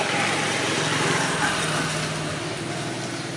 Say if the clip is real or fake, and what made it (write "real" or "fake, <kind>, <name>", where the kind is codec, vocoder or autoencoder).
real